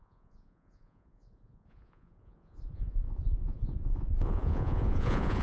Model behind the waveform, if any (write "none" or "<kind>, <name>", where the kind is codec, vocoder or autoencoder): vocoder, Vocos